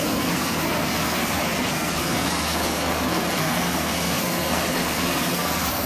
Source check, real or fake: fake